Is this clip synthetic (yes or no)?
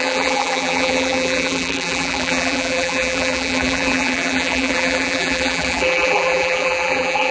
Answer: yes